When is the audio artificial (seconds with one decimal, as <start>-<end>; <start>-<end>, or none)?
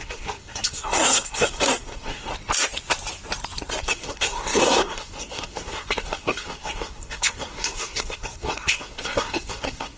0.0-2.3; 3.8-10.0